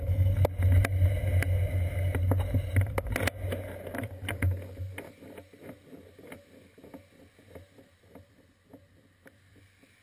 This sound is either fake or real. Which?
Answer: real